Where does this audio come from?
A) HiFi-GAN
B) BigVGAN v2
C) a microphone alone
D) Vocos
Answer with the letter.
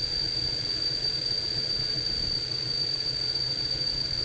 D